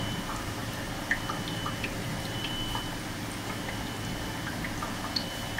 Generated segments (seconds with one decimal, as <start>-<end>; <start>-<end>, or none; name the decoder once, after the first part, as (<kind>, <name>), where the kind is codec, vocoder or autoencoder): 0.0-5.6 (vocoder, BigVGAN v2)